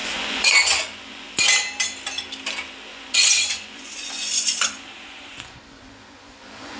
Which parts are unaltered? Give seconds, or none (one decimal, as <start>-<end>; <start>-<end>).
1.4-2.9